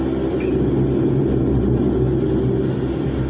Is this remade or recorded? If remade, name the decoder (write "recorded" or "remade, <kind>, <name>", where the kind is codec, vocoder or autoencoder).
recorded